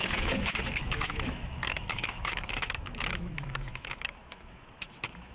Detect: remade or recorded remade